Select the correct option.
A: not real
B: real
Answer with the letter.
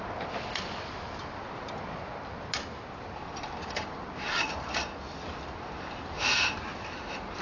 B